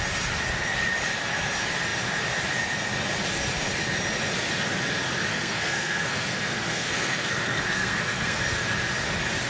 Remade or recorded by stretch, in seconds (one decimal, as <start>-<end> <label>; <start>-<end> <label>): 0.0-5.3 recorded; 5.3-8.4 remade; 8.4-9.5 recorded